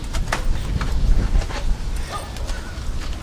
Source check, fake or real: real